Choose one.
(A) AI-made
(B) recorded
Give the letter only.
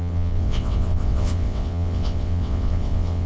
A